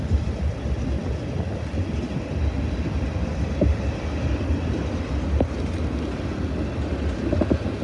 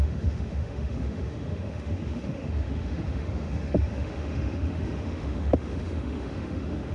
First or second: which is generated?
second